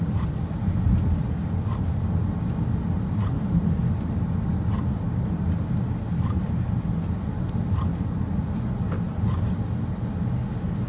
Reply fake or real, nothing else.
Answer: real